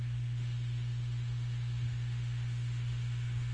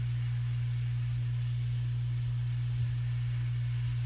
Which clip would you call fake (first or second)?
first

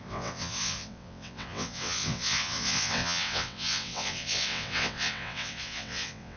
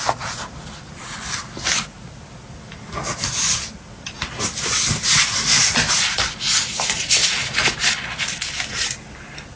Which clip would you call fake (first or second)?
first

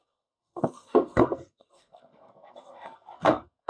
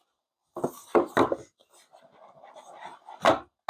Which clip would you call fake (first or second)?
first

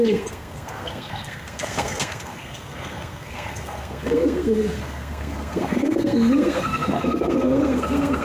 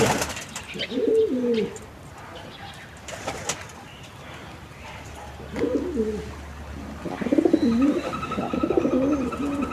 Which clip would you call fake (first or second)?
first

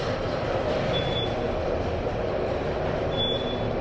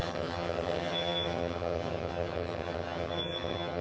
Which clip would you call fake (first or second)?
second